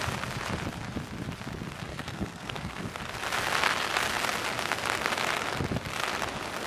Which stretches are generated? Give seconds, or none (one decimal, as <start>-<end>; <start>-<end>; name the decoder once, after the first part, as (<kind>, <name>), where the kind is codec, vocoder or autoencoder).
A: 1.9-2.8 (codec, SNAC)